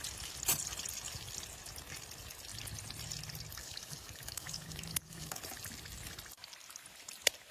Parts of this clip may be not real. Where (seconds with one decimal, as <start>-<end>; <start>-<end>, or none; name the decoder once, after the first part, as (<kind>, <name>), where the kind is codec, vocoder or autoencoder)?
3.6-5.4 (codec, DAC)